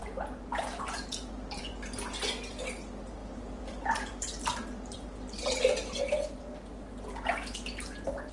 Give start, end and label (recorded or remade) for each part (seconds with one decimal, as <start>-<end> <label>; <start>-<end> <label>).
0.0-3.2 recorded; 3.2-6.0 remade; 6.0-8.3 recorded